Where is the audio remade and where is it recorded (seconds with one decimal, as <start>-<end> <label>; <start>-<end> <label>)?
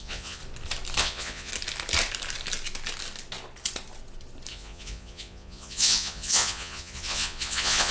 0.0-0.4 remade; 0.4-1.0 recorded; 1.0-1.5 remade; 1.5-4.5 recorded; 4.5-7.9 remade